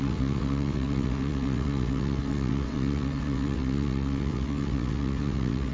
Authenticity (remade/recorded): remade